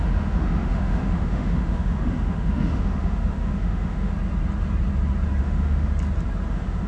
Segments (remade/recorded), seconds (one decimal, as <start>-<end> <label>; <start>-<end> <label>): 0.0-4.1 remade; 4.1-5.4 recorded; 5.4-5.9 remade; 5.9-6.5 recorded; 6.5-6.9 remade

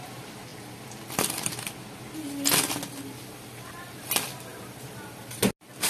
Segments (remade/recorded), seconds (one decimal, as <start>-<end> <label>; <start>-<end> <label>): 0.0-5.9 recorded